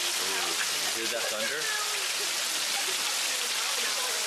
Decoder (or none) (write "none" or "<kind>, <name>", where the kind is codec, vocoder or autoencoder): none